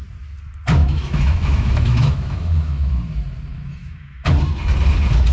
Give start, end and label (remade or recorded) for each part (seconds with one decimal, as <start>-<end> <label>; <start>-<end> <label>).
0.0-0.8 recorded; 0.8-2.9 remade; 2.9-3.5 recorded; 3.5-4.3 remade; 4.3-5.3 recorded